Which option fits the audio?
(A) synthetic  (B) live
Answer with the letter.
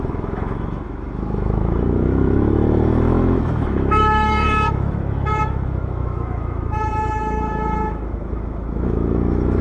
A